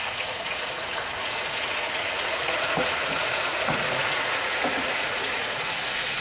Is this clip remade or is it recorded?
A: remade